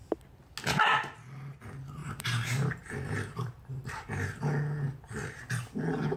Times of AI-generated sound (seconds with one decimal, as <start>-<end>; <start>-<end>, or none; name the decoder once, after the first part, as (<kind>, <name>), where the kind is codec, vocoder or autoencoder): 2.0-4.4 (vocoder, BigVGAN v2)

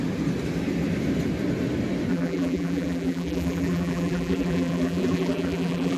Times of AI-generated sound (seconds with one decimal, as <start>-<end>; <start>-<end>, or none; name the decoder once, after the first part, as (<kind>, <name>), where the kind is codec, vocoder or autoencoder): 2.1-6.0 (vocoder, BigVGAN v2)

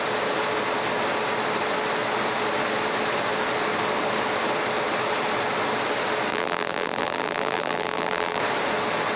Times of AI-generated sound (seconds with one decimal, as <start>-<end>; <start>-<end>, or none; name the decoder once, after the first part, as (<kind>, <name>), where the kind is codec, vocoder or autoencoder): 6.3-8.4 (vocoder, BigVGAN v2)

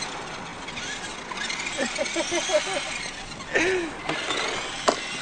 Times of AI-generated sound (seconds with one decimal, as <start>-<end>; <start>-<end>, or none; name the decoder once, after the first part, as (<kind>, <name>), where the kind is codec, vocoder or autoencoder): none